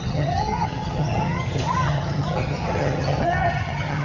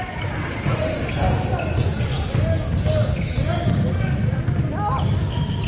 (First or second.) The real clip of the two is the second